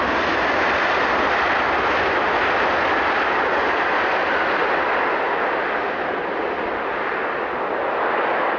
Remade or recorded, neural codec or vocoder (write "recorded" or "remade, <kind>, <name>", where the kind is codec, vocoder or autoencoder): recorded